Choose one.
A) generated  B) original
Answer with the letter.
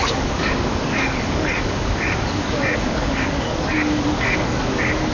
A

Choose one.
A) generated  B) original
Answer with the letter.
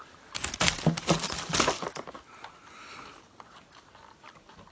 B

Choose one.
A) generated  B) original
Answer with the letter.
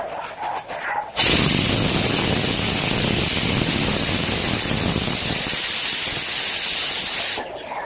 B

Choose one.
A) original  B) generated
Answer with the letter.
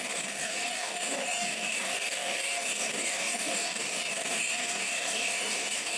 B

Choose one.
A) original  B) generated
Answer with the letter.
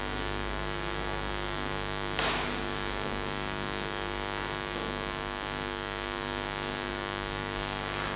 B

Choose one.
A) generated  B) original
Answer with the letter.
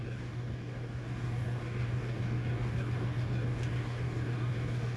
A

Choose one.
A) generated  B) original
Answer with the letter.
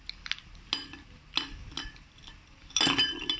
B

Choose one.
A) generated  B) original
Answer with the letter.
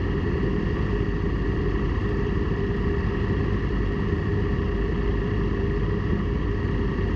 B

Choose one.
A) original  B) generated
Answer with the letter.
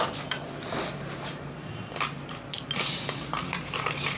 A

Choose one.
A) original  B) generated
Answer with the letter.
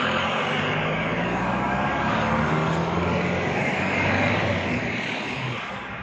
B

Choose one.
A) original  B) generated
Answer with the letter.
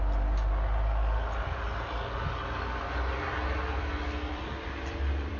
A